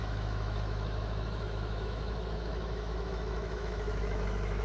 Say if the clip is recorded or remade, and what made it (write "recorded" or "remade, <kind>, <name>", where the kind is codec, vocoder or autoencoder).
remade, autoencoder, DAC-VAE